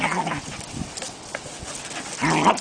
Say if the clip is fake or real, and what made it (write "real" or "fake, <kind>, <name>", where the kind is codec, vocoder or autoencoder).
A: real